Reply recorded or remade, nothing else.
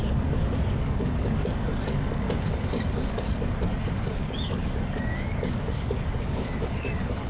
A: remade